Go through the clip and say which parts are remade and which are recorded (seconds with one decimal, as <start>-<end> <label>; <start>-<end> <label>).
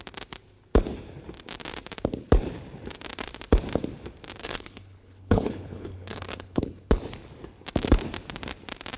0.0-4.4 recorded; 4.4-6.6 remade; 6.6-9.0 recorded